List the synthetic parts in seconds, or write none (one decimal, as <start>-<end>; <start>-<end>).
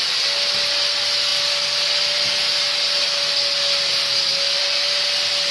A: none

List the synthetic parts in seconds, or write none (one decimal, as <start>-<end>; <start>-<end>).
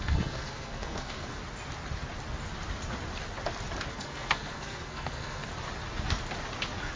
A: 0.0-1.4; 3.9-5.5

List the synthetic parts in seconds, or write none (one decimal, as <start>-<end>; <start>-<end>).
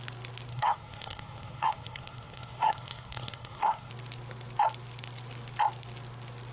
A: 0.5-3.9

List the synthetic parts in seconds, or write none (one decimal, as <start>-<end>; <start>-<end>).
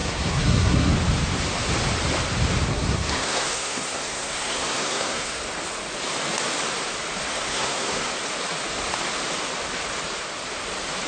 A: 0.0-0.9; 2.7-5.4; 7.3-8.1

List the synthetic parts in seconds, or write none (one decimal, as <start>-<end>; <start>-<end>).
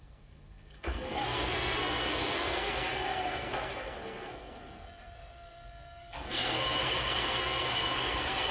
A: 0.0-8.5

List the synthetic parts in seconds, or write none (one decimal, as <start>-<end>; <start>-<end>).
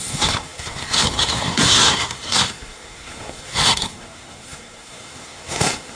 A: 0.0-6.0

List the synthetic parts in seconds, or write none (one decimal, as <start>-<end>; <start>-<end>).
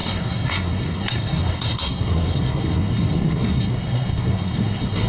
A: 0.0-5.1